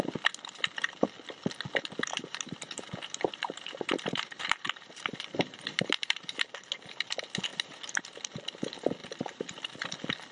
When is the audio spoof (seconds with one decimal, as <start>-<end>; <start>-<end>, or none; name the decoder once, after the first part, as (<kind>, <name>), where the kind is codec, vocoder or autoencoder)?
2.1-6.4 (vocoder, BigVGAN v2); 7.5-8.0; 9.0-9.6